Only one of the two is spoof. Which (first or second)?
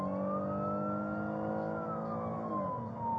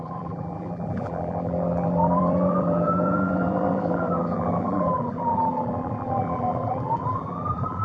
second